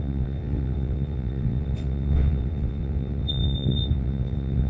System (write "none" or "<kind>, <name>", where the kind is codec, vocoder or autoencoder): vocoder, WaveNeXt